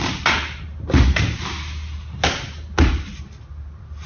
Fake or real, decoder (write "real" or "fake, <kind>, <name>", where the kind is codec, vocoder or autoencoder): real